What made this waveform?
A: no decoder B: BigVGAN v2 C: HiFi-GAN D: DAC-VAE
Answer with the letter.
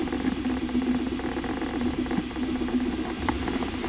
A